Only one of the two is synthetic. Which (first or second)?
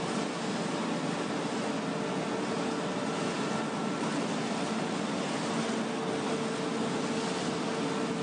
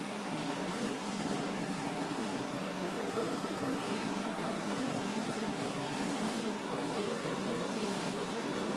second